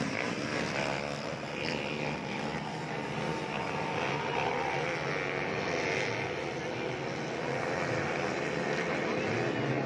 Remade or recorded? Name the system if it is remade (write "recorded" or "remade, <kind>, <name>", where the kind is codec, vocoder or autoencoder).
recorded